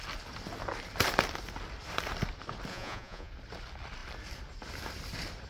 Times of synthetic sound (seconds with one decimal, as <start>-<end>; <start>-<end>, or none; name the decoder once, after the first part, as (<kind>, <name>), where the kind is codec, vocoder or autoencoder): 2.7-3.3 (vocoder, Vocos)